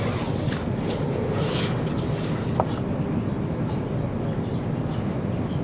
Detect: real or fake real